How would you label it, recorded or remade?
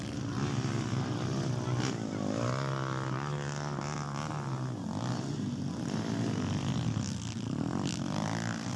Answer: recorded